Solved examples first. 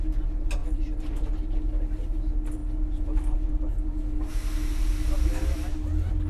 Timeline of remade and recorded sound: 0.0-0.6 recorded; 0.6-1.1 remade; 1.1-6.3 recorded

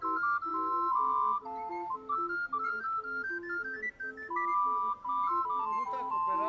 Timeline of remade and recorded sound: 0.0-6.5 recorded

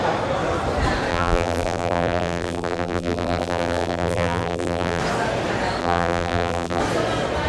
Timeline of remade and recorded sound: 0.0-1.1 recorded; 1.1-5.0 remade; 5.0-5.8 recorded; 5.8-6.8 remade; 6.8-7.5 recorded

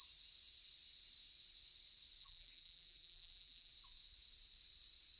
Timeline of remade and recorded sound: 0.0-2.2 recorded; 2.2-3.7 remade; 3.7-5.2 recorded